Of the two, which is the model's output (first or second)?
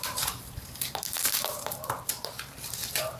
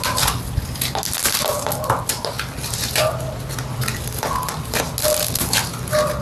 first